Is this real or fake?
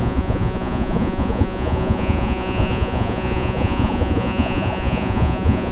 fake